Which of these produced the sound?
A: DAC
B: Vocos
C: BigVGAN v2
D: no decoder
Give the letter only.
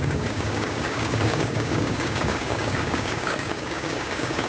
A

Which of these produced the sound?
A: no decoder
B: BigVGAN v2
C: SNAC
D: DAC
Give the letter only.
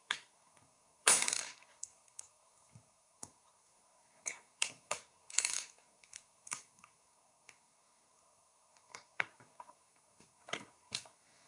C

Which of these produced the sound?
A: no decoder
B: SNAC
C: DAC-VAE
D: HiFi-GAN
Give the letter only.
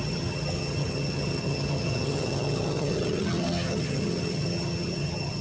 D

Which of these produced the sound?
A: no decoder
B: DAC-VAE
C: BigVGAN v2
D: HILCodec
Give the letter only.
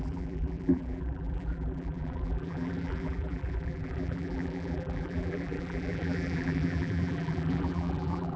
C